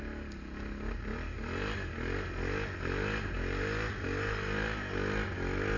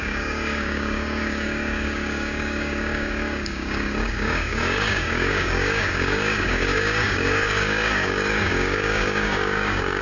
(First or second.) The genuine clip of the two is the first